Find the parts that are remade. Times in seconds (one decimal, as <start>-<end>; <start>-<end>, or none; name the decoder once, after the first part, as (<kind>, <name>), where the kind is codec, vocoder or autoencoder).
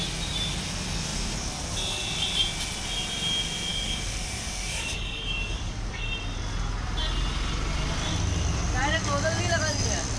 3.7-6.0 (codec, DAC)